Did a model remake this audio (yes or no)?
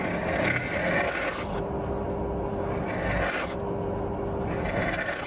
no